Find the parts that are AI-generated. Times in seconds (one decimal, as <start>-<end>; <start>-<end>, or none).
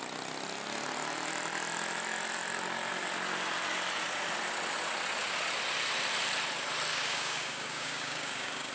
6.9-8.7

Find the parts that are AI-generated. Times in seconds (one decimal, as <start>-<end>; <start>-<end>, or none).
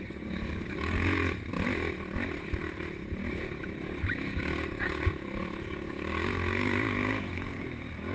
0.0-1.2; 3.3-8.1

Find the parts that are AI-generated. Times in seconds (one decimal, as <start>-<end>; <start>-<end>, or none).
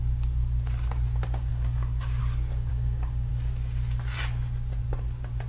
1.5-2.2; 2.7-3.3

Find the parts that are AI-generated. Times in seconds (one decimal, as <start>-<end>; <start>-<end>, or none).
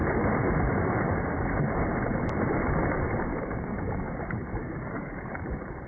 3.3-4.1; 4.6-5.3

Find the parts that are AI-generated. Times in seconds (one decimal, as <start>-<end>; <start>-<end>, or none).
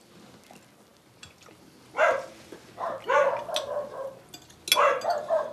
none